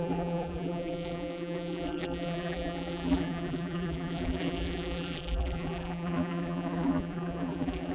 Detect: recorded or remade remade